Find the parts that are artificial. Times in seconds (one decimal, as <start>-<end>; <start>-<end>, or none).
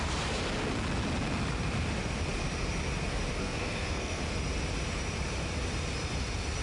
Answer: 3.4-4.2